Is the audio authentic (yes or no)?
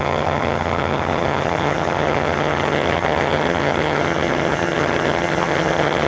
no